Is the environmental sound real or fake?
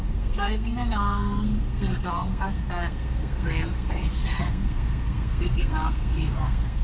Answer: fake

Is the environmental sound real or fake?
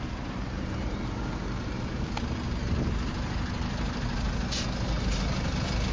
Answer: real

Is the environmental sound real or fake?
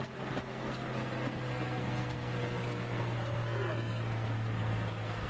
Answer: fake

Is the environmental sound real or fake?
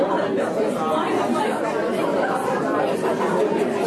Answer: real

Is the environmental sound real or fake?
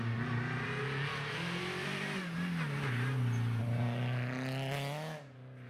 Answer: real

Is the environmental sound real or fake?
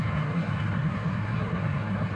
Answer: fake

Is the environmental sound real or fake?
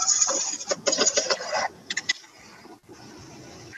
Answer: real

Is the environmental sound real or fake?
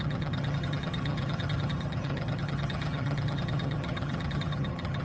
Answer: fake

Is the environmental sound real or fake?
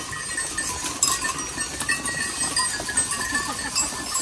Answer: real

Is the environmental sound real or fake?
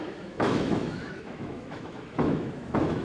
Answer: fake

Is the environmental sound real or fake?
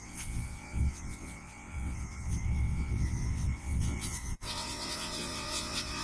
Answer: fake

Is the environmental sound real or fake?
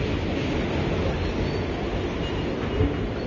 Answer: real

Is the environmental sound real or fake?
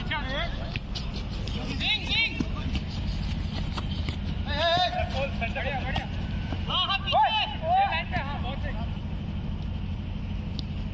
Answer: real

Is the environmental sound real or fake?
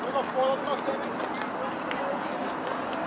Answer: real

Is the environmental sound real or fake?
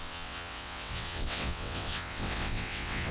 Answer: fake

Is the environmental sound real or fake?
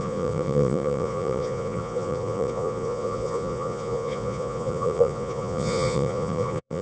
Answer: fake